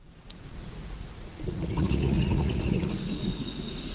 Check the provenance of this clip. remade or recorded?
remade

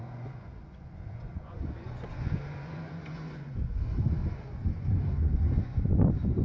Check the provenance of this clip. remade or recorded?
remade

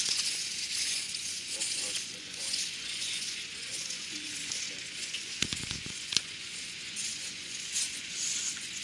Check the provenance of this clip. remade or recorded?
remade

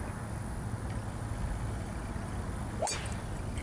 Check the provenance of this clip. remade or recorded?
recorded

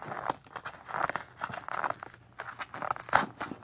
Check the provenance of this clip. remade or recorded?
recorded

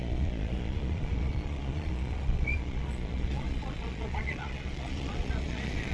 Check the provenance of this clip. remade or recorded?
remade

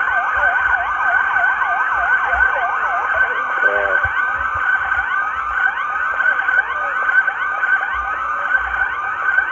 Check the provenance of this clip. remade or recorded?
recorded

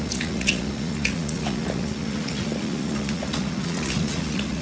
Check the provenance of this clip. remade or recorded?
remade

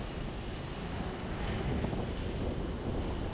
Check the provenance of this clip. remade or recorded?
recorded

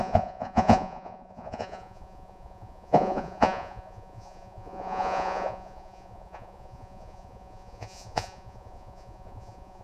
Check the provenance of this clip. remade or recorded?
remade